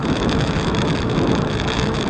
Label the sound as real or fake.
fake